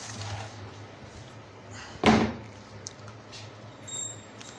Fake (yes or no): no